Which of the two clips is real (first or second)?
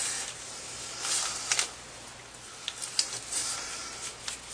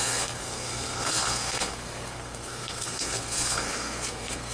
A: first